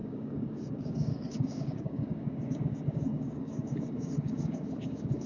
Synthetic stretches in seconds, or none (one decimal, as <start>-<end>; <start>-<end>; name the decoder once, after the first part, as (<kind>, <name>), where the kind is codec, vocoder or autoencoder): 0.0-5.3 (codec, DAC)